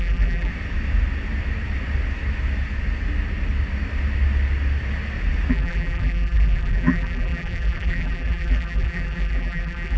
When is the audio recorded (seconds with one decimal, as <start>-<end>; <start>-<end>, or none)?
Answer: 0.5-5.5